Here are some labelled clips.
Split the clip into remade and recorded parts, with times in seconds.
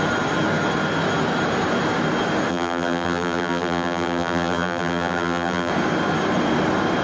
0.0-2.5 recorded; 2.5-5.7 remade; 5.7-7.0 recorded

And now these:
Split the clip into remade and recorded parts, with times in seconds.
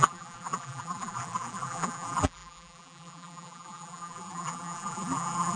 0.0-5.6 remade